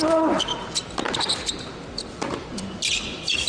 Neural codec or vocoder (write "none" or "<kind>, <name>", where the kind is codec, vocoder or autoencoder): vocoder, BigVGAN v2